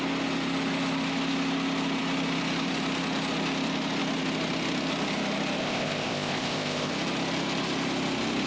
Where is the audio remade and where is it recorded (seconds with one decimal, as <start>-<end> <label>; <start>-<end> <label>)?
0.0-5.6 recorded; 5.6-6.9 remade; 6.9-8.5 recorded

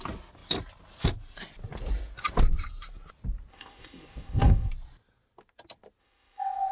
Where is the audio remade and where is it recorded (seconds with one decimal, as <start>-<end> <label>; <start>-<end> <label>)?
0.0-3.5 recorded; 3.5-4.7 remade; 4.7-6.0 recorded; 6.0-6.7 remade